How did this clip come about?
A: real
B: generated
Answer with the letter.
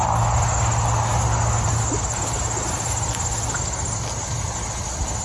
A